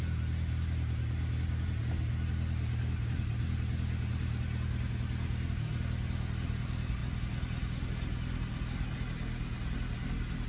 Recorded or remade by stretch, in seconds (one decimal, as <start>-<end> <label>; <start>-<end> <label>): 0.0-10.5 recorded